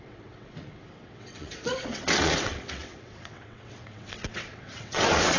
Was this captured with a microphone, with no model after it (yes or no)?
no